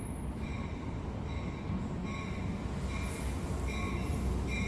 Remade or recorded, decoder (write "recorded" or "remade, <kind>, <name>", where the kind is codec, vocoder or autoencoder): recorded